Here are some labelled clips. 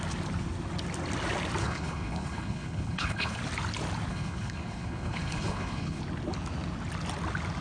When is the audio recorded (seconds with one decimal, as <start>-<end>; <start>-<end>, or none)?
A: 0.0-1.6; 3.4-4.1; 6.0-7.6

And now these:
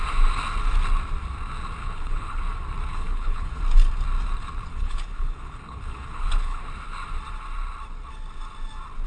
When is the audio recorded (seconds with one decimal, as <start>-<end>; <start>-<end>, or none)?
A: 0.0-1.8; 2.4-2.9; 3.6-4.7; 6.6-9.1

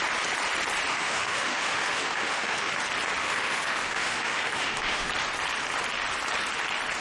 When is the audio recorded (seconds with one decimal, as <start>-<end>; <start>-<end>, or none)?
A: 0.0-0.9; 2.7-3.2; 5.1-7.0